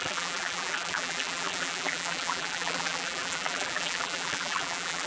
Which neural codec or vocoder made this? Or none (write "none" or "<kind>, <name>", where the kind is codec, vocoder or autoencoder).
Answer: vocoder, BigVGAN v2